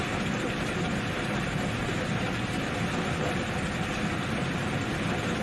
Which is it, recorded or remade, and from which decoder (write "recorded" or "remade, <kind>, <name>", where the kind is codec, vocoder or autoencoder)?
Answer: recorded